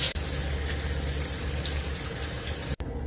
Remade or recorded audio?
recorded